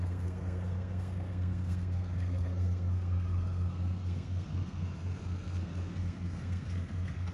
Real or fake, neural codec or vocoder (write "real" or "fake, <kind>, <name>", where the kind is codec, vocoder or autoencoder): fake, codec, SNAC